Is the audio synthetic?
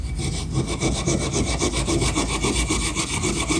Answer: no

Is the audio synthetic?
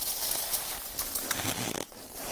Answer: no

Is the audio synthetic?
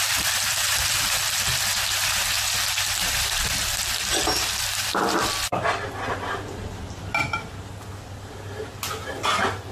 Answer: no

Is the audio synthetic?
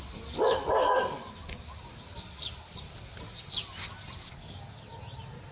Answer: no